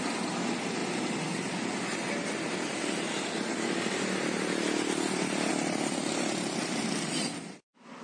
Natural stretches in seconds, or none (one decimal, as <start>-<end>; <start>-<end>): 0.0-8.0